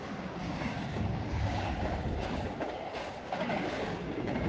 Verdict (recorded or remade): remade